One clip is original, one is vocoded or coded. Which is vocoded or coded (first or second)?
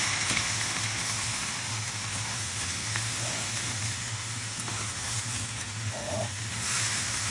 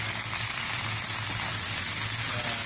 first